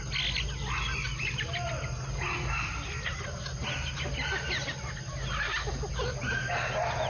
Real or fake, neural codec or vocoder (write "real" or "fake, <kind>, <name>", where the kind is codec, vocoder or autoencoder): real